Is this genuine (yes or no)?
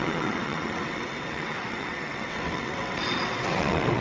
no